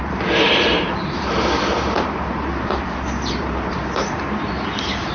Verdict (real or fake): fake